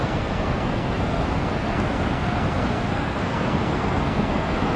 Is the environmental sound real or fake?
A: fake